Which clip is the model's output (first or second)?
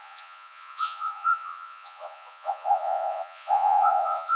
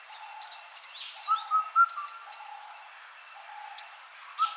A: first